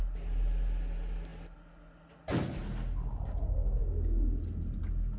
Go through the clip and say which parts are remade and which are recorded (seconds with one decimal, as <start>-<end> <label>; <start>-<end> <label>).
0.0-5.2 recorded

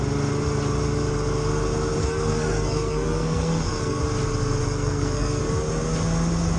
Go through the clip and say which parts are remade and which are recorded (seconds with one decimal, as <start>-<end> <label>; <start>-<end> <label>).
0.0-2.0 recorded; 2.0-4.0 remade; 4.0-4.6 recorded; 4.6-5.4 remade; 5.4-6.6 recorded

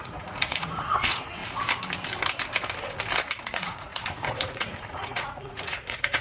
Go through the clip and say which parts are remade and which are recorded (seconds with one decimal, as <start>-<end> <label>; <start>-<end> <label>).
0.0-1.4 remade; 1.4-3.2 recorded; 3.2-6.2 remade

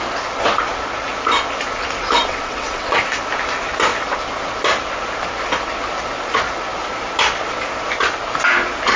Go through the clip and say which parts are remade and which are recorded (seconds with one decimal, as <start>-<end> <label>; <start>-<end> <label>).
0.0-2.3 recorded; 2.3-3.0 remade; 3.0-9.0 recorded

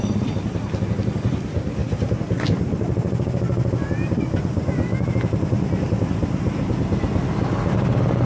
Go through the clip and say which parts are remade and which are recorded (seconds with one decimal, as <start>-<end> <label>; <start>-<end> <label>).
0.0-7.6 recorded; 7.6-8.3 remade

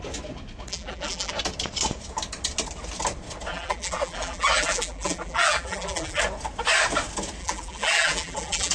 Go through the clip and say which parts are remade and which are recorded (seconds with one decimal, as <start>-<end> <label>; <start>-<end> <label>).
0.0-0.7 recorded; 0.7-1.3 remade; 1.3-3.5 recorded; 3.5-6.2 remade; 6.2-7.4 recorded; 7.4-8.7 remade